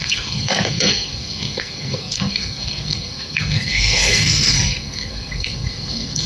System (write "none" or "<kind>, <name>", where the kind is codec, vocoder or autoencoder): codec, SNAC